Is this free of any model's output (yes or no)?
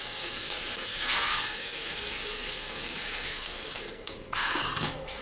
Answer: no